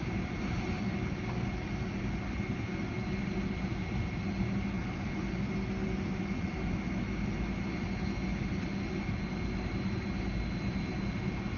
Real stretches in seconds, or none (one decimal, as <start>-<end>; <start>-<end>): 0.0-11.6

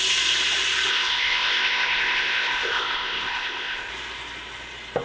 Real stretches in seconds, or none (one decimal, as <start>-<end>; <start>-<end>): 0.0-0.9; 3.9-5.0

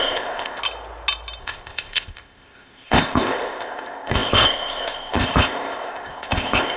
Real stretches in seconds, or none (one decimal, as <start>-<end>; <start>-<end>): 0.6-1.4